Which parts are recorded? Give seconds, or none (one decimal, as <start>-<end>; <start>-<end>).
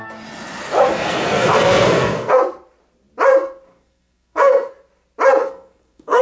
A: 0.0-0.9; 2.4-3.7; 4.7-5.4